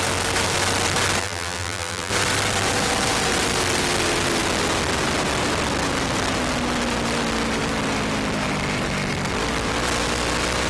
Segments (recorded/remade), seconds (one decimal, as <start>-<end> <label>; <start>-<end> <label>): 0.0-1.2 recorded; 1.2-2.1 remade; 2.1-10.7 recorded